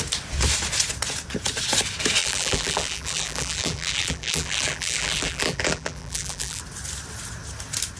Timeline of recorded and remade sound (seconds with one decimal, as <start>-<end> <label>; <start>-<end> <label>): 0.0-2.2 recorded; 2.2-6.6 remade; 6.6-8.0 recorded